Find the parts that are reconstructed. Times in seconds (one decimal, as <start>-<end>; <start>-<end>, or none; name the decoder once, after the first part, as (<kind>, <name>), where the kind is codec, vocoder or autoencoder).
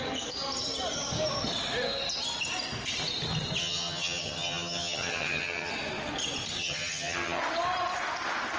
3.6-5.7 (vocoder, HiFi-GAN); 6.6-7.4